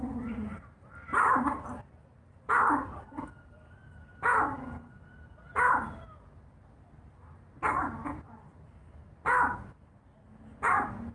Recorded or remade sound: recorded